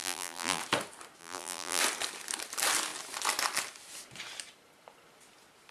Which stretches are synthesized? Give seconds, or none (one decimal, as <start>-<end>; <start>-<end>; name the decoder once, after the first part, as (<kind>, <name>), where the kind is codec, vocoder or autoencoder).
0.0-0.6 (vocoder, BigVGAN v2); 1.2-1.8